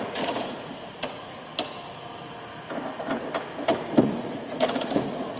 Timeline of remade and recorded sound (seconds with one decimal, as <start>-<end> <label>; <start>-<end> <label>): 0.0-1.5 remade; 1.5-4.0 recorded; 4.0-5.4 remade